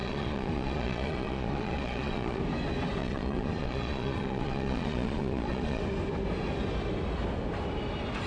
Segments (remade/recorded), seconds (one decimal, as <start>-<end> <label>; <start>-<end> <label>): 0.0-2.4 remade; 2.4-3.0 recorded; 3.0-5.8 remade; 5.8-8.3 recorded